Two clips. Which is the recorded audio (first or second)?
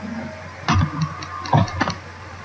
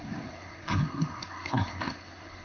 first